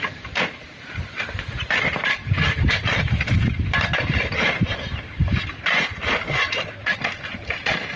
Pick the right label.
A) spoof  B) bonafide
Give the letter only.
A